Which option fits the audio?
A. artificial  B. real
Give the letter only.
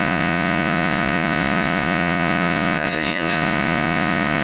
A